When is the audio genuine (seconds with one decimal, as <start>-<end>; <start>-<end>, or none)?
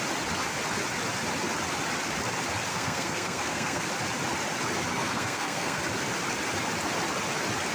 0.0-2.7; 3.9-4.9; 5.8-7.7